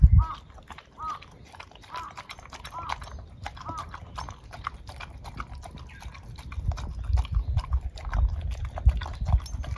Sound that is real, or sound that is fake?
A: real